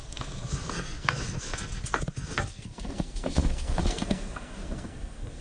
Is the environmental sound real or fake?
fake